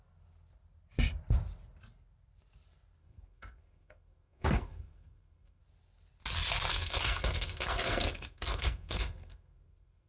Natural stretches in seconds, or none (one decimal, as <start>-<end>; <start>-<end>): 0.0-3.0; 5.6-6.7